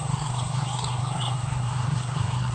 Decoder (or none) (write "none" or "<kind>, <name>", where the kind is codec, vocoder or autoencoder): codec, SNAC